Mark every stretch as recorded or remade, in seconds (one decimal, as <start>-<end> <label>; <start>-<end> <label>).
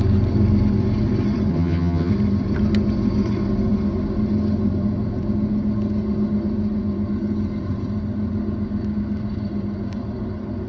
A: 0.0-1.5 recorded; 1.5-2.1 remade; 2.1-10.7 recorded